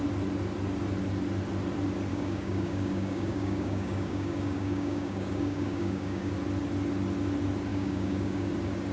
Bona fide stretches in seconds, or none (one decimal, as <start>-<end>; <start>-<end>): 0.0-2.1; 6.3-7.7; 8.5-8.9